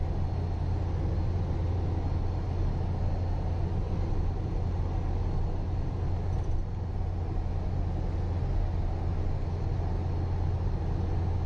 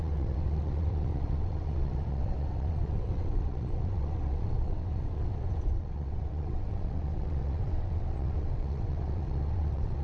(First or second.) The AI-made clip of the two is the second